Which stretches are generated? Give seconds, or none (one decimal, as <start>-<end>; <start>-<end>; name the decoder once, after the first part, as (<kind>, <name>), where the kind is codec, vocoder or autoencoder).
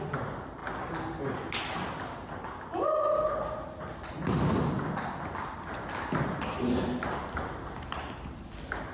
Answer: none